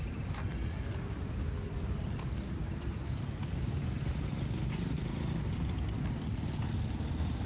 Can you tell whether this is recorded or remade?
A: recorded